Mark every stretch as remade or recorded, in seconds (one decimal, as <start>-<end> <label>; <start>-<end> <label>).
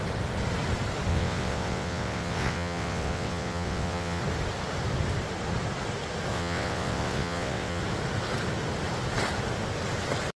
0.0-1.1 recorded; 1.1-4.2 remade; 4.2-6.3 recorded; 6.3-7.8 remade; 7.8-10.4 recorded